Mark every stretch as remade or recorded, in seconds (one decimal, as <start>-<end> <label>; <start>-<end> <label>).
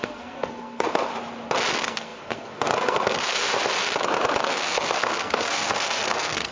0.0-1.1 remade; 1.1-1.7 recorded; 1.7-3.5 remade; 3.5-4.4 recorded; 4.4-6.5 remade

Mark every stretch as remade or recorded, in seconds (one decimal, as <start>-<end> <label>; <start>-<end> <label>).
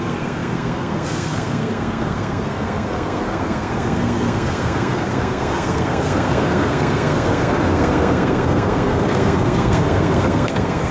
0.0-10.9 remade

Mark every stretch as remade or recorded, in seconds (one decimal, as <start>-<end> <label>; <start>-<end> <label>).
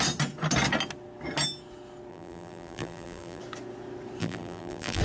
0.0-2.1 recorded; 2.1-3.4 remade; 3.4-4.2 recorded; 4.2-5.0 remade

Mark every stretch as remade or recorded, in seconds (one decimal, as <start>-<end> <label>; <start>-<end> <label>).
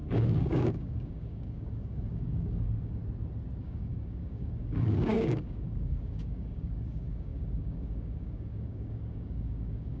0.0-3.0 remade; 3.0-3.6 recorded; 3.6-10.0 remade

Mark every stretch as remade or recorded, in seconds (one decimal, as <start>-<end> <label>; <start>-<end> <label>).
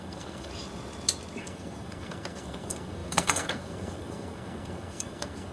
0.0-0.5 remade; 0.5-1.4 recorded; 1.4-5.5 remade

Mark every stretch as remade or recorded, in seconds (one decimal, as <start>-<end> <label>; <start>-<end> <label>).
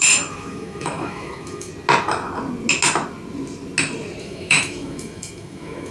0.0-1.7 remade; 1.7-4.2 recorded; 4.2-5.9 remade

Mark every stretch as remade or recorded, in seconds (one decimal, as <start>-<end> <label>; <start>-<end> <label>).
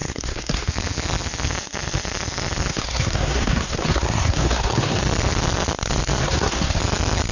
0.0-0.7 remade; 0.7-2.7 recorded; 2.7-5.0 remade; 5.0-6.2 recorded; 6.2-6.8 remade; 6.8-7.3 recorded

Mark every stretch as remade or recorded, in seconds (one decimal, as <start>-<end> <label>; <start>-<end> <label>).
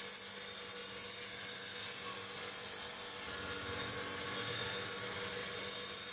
0.0-6.1 recorded